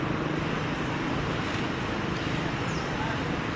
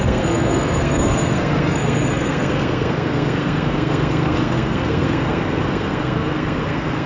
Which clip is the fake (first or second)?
second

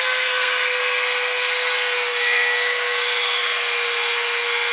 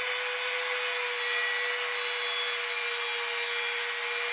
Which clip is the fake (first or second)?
first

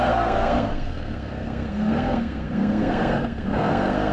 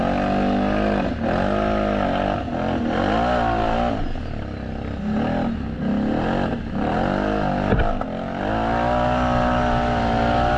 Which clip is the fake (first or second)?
first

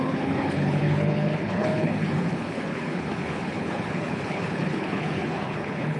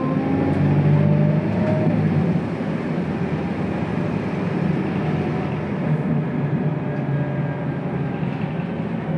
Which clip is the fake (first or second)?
first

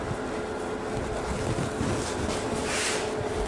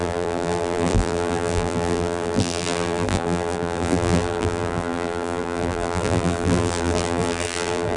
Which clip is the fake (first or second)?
second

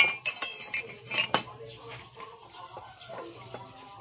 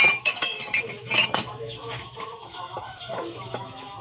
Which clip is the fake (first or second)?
second